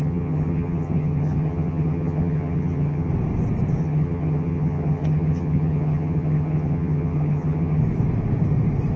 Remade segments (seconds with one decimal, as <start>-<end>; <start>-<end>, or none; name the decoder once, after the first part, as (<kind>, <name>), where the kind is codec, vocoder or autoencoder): 0.0-3.1 (vocoder, HiFi-GAN); 3.8-7.8